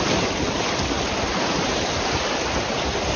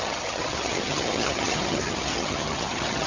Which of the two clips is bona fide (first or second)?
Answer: first